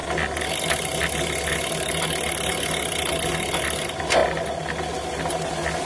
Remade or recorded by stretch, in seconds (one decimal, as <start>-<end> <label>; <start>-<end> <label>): 0.0-5.8 recorded